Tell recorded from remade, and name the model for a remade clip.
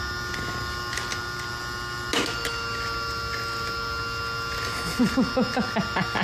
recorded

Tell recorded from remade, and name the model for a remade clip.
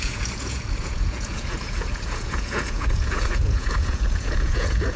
remade, vocoder, Vocos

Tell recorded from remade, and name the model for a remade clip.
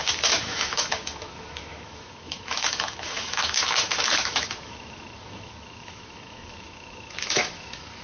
remade, autoencoder, DAC-VAE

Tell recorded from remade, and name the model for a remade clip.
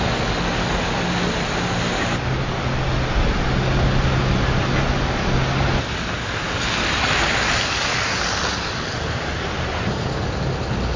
recorded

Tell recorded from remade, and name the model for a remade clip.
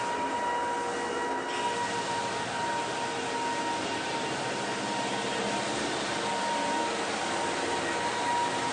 recorded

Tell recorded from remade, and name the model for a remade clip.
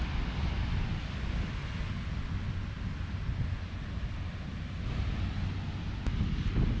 recorded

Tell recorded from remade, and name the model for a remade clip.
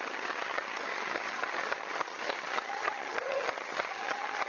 remade, vocoder, HiFi-GAN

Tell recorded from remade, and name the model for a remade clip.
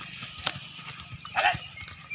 recorded